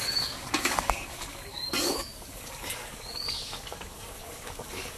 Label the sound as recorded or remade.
remade